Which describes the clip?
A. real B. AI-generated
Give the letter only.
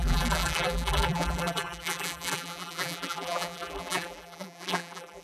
B